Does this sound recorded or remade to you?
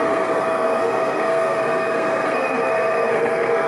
remade